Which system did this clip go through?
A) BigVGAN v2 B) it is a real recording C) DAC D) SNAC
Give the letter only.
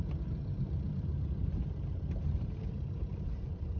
A